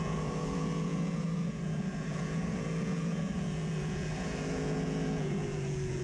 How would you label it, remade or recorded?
remade